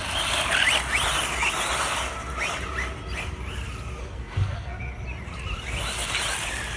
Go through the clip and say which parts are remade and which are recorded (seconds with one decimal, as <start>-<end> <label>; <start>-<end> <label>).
0.0-4.0 recorded; 4.0-4.8 remade; 4.8-6.8 recorded

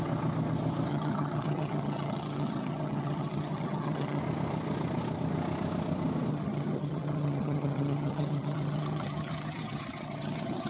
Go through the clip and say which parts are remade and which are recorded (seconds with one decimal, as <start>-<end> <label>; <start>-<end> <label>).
0.0-0.9 recorded; 0.9-4.2 remade; 4.2-6.3 recorded; 6.3-10.7 remade